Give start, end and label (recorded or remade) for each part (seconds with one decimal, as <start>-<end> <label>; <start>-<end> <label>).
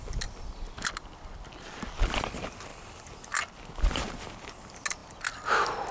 0.0-5.9 recorded